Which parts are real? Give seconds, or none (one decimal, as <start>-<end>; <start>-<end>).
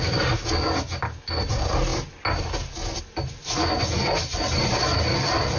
0.0-5.6